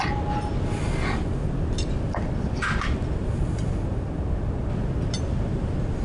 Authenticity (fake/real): real